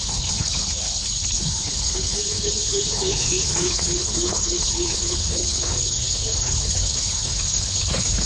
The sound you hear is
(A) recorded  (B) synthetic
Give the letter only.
B